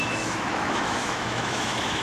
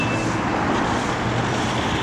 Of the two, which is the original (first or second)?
second